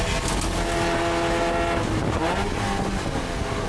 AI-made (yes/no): no